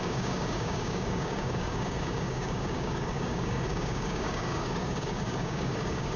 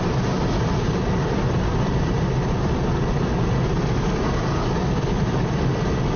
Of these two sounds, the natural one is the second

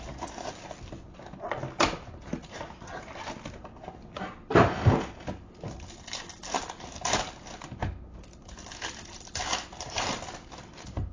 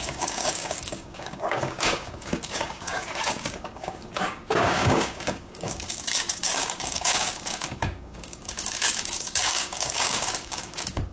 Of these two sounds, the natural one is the first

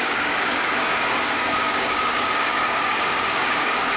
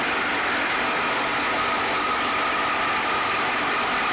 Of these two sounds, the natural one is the second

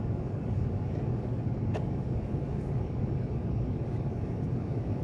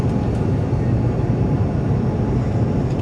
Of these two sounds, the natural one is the second